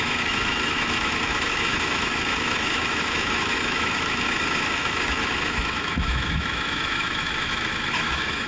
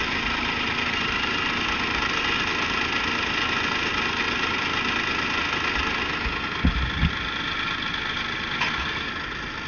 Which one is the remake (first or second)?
first